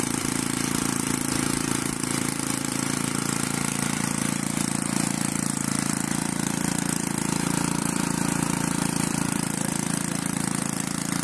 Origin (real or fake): fake